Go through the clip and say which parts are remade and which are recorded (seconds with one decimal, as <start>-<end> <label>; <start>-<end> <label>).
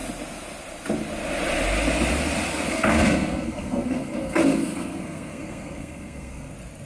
0.0-2.5 recorded; 2.5-6.5 remade; 6.5-6.9 recorded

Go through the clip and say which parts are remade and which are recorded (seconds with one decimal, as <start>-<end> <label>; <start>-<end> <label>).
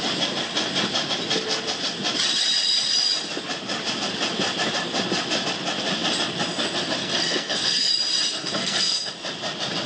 0.0-7.0 recorded; 7.0-7.9 remade; 7.9-8.3 recorded; 8.3-9.1 remade; 9.1-9.9 recorded